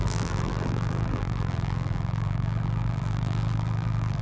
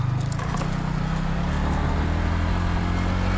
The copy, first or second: first